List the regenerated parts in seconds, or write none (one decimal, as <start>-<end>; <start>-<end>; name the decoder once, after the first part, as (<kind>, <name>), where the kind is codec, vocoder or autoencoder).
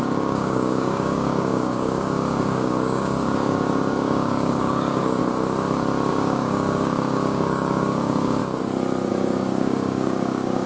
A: 0.0-5.2 (codec, DAC); 6.1-8.4; 9.1-10.7